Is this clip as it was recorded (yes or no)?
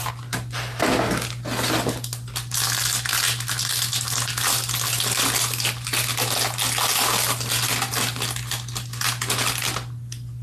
yes